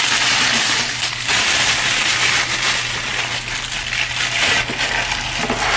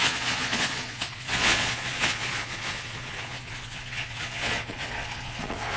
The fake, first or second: second